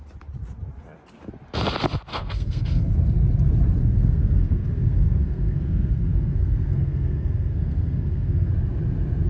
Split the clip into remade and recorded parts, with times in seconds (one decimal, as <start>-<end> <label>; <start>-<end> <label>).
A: 0.0-2.1 recorded; 2.1-2.9 remade; 2.9-3.8 recorded; 3.8-8.5 remade; 8.5-9.3 recorded